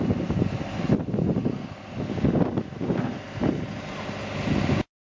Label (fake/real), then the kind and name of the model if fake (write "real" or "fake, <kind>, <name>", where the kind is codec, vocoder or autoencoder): real